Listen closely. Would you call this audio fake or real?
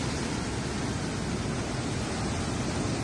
real